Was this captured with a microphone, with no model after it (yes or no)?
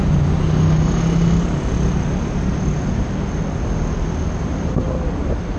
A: yes